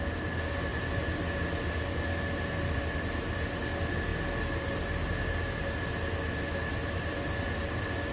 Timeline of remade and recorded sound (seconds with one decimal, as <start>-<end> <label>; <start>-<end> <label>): 0.0-8.1 recorded